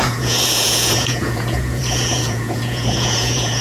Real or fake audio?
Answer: fake